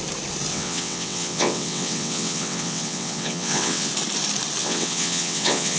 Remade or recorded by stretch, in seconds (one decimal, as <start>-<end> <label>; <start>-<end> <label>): 0.0-0.5 recorded; 0.5-3.9 remade; 3.9-4.6 recorded; 4.6-5.8 remade

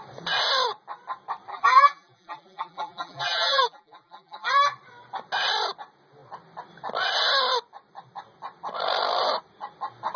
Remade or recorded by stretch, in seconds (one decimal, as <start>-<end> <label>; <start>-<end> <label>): 0.0-1.5 recorded; 1.5-4.5 remade; 4.5-10.2 recorded

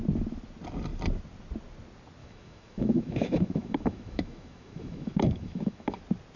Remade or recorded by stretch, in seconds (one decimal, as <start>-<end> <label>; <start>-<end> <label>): 0.0-2.2 recorded; 2.2-6.0 remade; 6.0-6.4 recorded

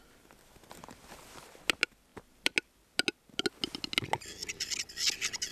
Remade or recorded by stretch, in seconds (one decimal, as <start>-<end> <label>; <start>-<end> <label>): 0.0-5.5 recorded